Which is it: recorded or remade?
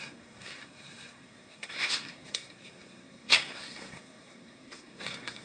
remade